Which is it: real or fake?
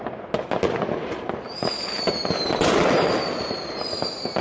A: real